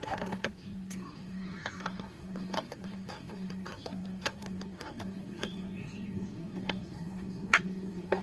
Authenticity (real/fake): fake